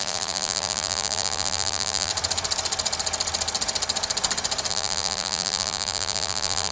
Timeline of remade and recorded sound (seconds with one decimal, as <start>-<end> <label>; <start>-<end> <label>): 0.0-2.1 remade; 2.1-4.7 recorded; 4.7-6.7 remade

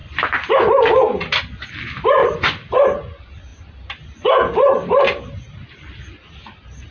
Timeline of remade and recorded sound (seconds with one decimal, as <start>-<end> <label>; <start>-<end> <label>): 0.0-0.6 remade; 0.6-2.2 recorded; 2.2-2.7 remade; 2.7-3.5 recorded; 3.5-6.3 remade; 6.3-6.9 recorded

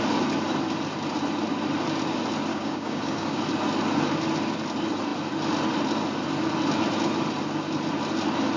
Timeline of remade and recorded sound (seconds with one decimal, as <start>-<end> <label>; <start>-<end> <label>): 0.0-2.5 recorded; 2.5-3.4 remade; 3.4-8.6 recorded

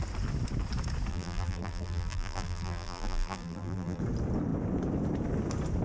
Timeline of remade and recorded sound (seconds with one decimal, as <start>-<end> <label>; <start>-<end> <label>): 0.0-1.1 recorded; 1.1-4.0 remade; 4.0-5.8 recorded

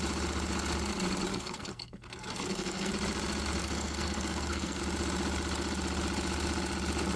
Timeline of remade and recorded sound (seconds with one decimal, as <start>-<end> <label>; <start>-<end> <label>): 0.0-1.3 recorded; 1.3-2.9 remade; 2.9-3.6 recorded; 3.6-4.8 remade; 4.8-7.2 recorded